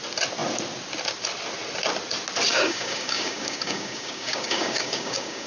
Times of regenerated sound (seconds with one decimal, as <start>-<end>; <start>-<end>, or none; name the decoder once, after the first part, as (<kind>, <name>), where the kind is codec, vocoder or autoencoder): 2.5-5.5 (codec, DAC)